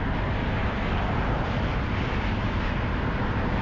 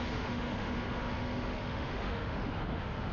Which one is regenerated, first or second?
second